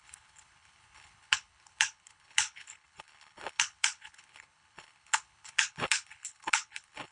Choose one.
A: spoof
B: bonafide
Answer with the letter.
A